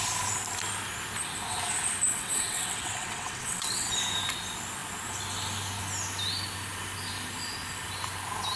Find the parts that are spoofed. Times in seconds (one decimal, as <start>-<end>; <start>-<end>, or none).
2.1-3.9